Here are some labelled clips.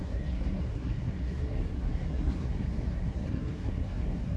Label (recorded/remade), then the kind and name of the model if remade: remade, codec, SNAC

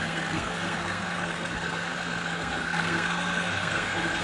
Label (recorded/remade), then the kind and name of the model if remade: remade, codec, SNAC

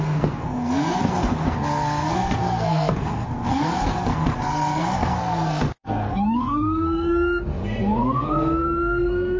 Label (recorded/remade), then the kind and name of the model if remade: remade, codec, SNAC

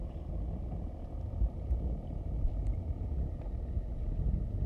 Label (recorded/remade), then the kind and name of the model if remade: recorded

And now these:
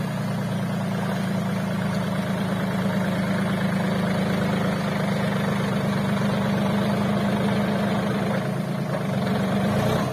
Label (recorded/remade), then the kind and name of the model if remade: recorded